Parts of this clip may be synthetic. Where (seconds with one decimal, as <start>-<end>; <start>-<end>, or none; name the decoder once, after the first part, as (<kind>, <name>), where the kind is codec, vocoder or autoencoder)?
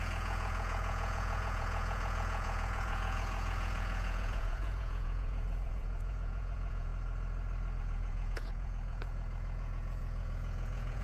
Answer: 0.0-6.9 (vocoder, Vocos); 7.8-11.0